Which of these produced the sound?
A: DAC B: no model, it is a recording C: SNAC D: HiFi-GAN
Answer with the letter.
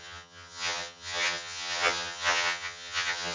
D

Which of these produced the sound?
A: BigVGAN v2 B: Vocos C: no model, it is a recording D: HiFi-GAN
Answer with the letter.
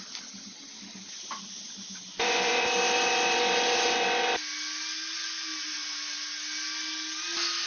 C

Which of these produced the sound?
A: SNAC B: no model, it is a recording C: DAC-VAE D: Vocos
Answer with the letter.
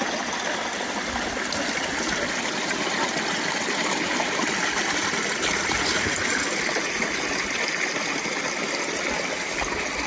B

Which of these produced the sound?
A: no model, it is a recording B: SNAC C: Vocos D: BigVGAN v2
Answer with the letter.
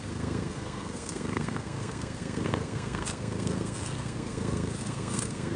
B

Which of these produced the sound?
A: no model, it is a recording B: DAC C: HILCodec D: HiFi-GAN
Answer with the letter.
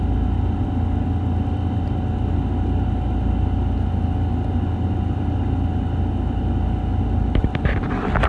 A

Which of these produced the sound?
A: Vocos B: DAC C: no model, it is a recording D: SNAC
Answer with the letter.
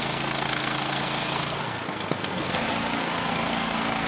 D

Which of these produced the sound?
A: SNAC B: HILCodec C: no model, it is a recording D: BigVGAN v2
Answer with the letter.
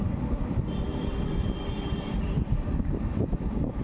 D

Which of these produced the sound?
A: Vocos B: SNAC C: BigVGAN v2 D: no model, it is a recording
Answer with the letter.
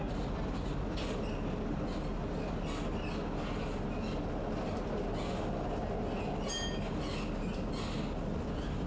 D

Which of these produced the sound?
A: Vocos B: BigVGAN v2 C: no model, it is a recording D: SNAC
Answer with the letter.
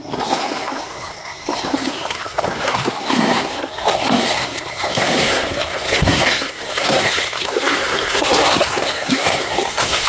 D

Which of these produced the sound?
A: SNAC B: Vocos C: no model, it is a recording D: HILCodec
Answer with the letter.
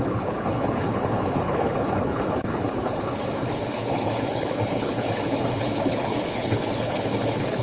D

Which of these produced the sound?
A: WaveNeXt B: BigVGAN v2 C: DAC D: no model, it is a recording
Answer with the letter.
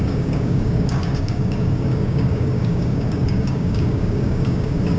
C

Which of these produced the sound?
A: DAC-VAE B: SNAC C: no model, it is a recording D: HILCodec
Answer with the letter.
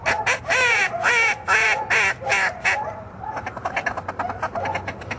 C